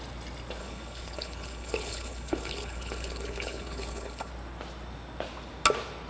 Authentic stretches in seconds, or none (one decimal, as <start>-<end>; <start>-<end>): 0.0-0.6; 4.3-6.1